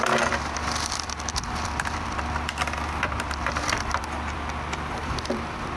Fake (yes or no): yes